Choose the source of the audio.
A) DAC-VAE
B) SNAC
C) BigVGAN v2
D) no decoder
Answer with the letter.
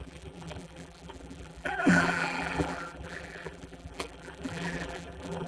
C